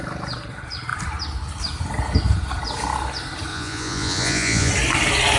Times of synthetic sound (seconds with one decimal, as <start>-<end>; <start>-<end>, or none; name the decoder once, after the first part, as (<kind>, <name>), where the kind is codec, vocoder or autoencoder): 3.5-4.7 (vocoder, Vocos)